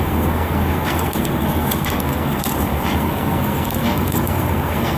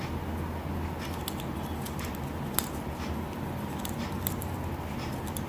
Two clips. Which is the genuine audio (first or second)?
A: second